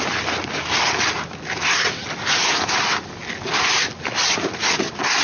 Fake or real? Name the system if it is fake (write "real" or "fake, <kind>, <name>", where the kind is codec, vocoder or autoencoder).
real